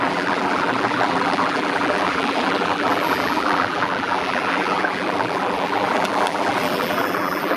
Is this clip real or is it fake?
fake